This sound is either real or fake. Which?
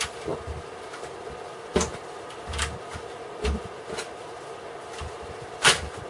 real